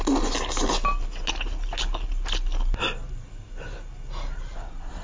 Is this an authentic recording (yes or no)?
yes